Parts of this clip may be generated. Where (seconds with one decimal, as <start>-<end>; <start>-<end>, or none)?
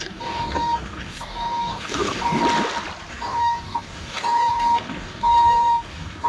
0.0-2.4; 3.1-6.3